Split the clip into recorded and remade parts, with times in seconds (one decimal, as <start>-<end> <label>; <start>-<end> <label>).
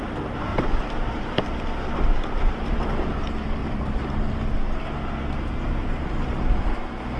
0.0-0.5 recorded; 0.5-1.6 remade; 1.6-3.6 recorded; 3.6-4.4 remade; 4.4-5.5 recorded; 5.5-6.3 remade; 6.3-7.2 recorded